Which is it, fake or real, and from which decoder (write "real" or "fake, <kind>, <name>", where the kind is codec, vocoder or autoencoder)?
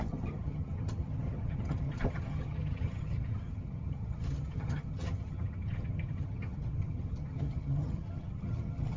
fake, vocoder, HiFi-GAN